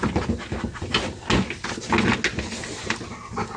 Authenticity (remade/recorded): recorded